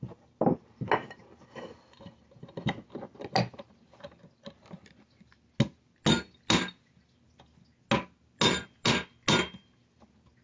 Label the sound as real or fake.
real